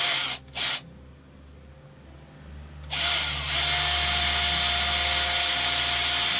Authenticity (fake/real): real